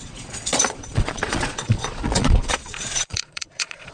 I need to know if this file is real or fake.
fake